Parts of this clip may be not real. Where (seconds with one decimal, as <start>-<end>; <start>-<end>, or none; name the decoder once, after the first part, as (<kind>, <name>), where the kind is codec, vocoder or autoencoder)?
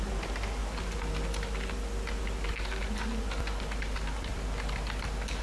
none